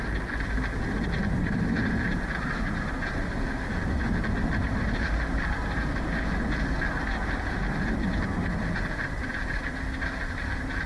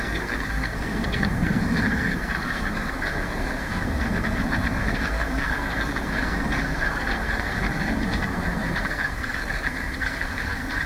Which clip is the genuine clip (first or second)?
first